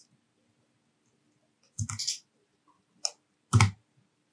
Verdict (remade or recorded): recorded